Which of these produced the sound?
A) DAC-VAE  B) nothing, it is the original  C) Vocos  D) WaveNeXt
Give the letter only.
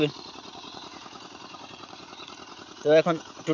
C